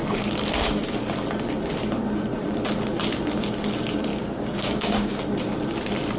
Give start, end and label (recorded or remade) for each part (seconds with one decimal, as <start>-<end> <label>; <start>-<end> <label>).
0.0-4.1 recorded; 4.1-5.2 remade; 5.2-6.2 recorded